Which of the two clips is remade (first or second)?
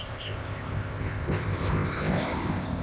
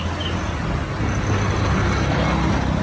first